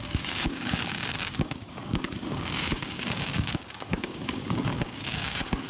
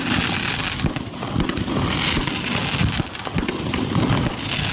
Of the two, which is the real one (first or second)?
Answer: second